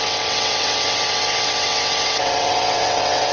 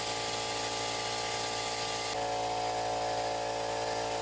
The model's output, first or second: first